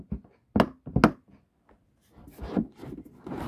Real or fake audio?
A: real